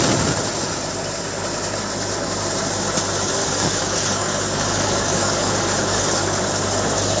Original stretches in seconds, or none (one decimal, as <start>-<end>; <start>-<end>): 0.0-3.4; 6.4-7.2